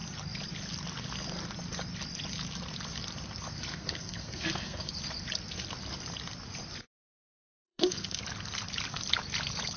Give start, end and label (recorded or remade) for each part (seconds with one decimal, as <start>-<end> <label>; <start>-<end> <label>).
0.0-3.7 recorded; 3.7-4.9 remade; 4.9-7.4 recorded; 7.4-8.2 remade; 8.2-9.8 recorded

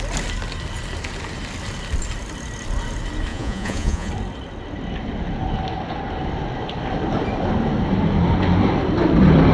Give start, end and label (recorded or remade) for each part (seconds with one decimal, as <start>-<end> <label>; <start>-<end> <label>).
0.0-3.3 recorded; 3.3-4.1 remade; 4.1-9.5 recorded

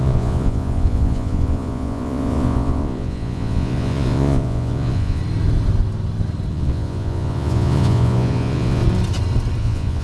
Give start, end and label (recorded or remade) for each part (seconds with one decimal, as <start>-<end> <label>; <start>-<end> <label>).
0.0-5.2 remade; 5.2-6.5 recorded; 6.5-8.8 remade; 8.8-9.6 recorded; 9.6-10.0 remade

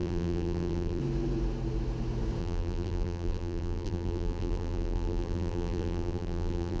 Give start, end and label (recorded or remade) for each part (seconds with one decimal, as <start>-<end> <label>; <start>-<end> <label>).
0.0-1.0 remade; 1.0-2.4 recorded; 2.4-6.8 remade

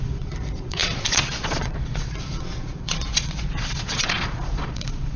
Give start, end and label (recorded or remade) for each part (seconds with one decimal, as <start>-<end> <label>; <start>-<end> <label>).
0.0-5.2 remade

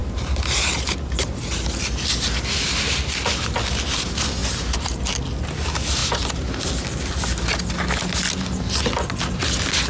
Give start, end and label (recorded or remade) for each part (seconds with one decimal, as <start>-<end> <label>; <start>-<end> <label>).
0.0-0.6 remade; 0.6-4.4 recorded; 4.4-5.0 remade; 5.0-6.0 recorded; 6.0-6.6 remade; 6.6-9.9 recorded

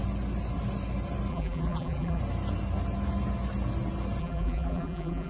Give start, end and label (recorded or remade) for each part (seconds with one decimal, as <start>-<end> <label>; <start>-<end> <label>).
0.0-1.3 recorded; 1.3-2.2 remade; 2.2-4.2 recorded; 4.2-5.3 remade

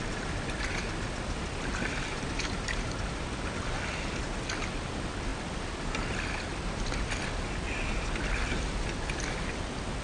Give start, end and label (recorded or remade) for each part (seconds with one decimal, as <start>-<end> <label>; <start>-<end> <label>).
0.0-10.0 recorded